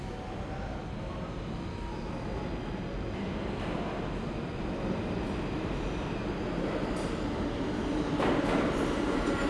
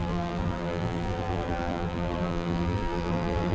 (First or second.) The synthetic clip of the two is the second